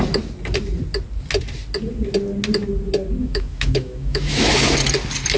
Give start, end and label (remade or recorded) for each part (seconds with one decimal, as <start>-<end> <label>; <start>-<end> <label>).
0.0-3.2 recorded; 3.2-4.5 remade; 4.5-5.4 recorded